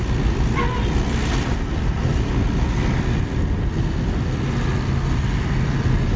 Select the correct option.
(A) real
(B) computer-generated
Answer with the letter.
A